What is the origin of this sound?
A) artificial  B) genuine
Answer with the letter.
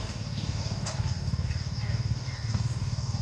A